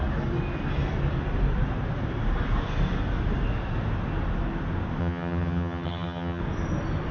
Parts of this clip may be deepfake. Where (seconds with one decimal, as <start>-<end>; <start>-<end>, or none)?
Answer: 5.0-6.4